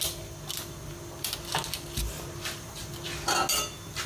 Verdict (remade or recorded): recorded